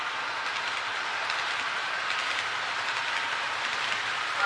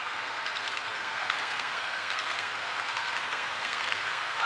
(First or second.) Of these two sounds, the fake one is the second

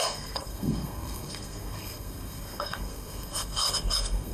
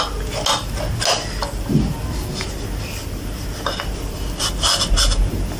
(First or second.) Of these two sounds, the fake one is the first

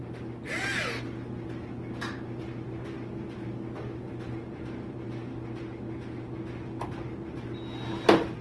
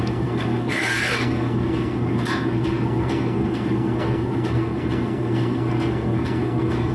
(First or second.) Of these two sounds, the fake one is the second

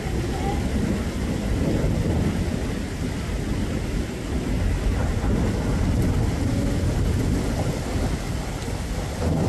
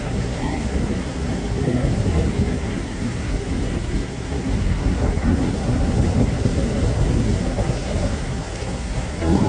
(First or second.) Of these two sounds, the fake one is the second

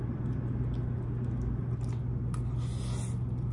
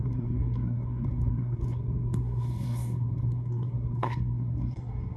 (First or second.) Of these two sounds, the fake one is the second